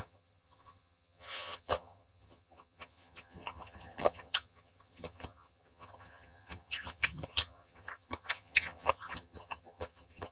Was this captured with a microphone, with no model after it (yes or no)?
no